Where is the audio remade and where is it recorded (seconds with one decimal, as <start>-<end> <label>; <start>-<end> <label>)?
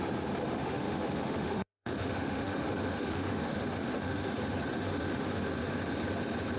0.0-0.4 recorded; 0.4-4.3 remade; 4.3-4.7 recorded; 4.7-5.8 remade; 5.8-6.6 recorded